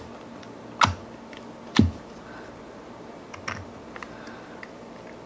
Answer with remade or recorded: recorded